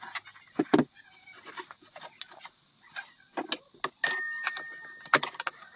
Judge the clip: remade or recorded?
recorded